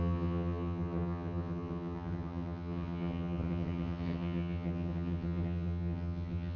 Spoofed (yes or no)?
yes